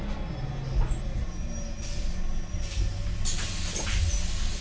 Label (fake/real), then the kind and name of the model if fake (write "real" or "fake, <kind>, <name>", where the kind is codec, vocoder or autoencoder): real